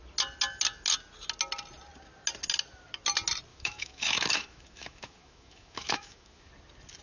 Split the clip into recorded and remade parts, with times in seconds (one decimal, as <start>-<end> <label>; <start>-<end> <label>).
0.0-3.5 recorded; 3.5-6.5 remade; 6.5-7.0 recorded

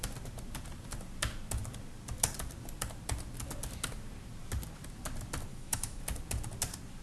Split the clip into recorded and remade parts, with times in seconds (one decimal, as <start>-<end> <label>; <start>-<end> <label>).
0.0-5.5 recorded; 5.5-6.0 remade; 6.0-7.0 recorded

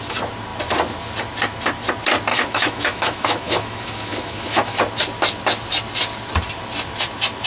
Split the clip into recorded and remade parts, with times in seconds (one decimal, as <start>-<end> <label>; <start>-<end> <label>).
0.0-2.3 recorded; 2.3-4.8 remade; 4.8-7.5 recorded

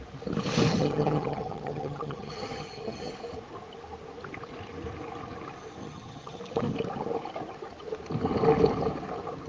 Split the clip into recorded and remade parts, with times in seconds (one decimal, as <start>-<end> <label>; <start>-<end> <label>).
0.0-0.7 recorded; 0.7-3.1 remade; 3.1-5.8 recorded; 5.8-6.4 remade; 6.4-9.5 recorded

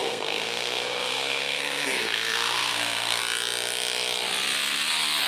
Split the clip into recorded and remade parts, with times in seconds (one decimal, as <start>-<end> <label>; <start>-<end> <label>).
0.0-3.2 remade; 3.2-5.3 recorded

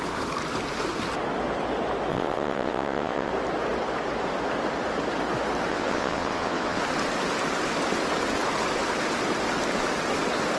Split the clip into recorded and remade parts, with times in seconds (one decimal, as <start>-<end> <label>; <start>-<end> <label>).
0.0-2.1 recorded; 2.1-3.3 remade; 3.3-5.7 recorded; 5.7-6.8 remade; 6.8-10.6 recorded

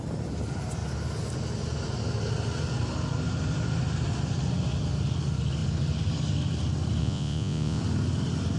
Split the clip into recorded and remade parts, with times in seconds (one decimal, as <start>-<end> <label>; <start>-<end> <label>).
0.0-7.0 recorded; 7.0-7.8 remade; 7.8-8.6 recorded

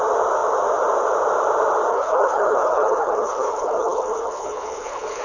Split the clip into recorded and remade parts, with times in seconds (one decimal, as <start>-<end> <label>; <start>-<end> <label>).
0.0-1.9 recorded; 1.9-5.2 remade